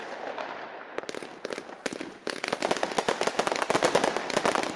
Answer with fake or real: real